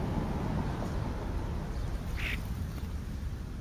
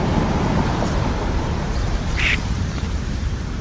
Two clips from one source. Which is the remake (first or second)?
second